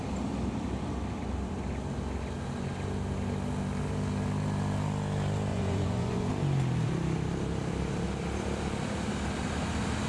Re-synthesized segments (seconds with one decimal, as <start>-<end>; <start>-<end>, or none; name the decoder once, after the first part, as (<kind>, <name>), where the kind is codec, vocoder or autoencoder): 5.5-6.3 (vocoder, Vocos)

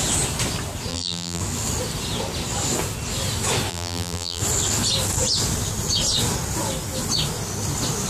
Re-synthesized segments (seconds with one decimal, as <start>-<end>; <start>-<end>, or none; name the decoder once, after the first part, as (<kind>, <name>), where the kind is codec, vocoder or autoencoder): 0.9-1.4 (vocoder, BigVGAN v2); 3.7-4.4

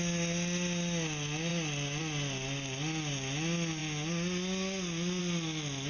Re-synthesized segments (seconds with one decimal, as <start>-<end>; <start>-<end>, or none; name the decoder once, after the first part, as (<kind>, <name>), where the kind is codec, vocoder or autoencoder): none

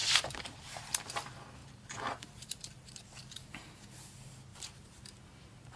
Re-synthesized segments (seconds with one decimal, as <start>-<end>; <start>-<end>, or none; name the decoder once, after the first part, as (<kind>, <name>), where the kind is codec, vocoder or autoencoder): 0.0-0.6 (vocoder, BigVGAN v2); 1.6-3.0; 4.5-5.8